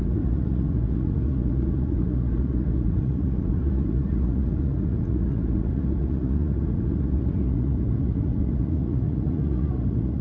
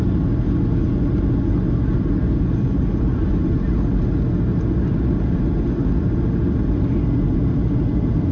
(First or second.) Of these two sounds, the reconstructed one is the first